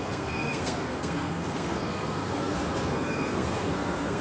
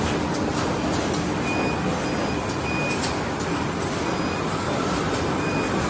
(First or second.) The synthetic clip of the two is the first